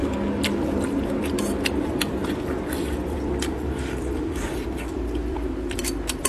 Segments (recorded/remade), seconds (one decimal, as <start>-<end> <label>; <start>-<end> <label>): 0.0-1.4 recorded; 1.4-6.3 remade